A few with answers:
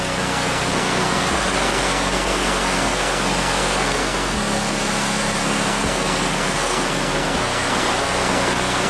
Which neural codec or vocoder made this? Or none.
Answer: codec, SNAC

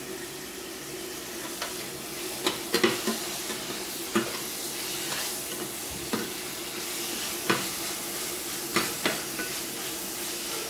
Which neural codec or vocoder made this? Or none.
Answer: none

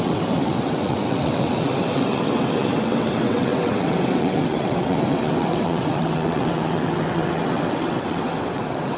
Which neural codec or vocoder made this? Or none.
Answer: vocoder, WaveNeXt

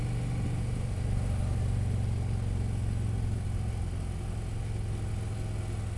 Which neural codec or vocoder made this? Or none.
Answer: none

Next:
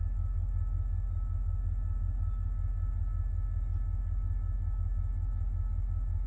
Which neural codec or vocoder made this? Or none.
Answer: none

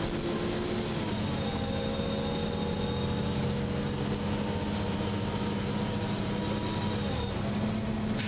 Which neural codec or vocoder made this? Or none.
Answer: none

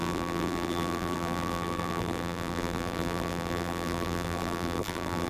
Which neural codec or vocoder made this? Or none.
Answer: vocoder, BigVGAN v2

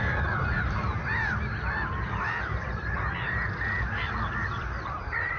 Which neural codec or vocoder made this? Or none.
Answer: none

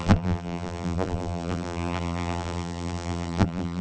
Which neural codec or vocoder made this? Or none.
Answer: vocoder, BigVGAN v2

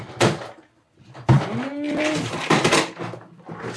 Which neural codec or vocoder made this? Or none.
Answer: none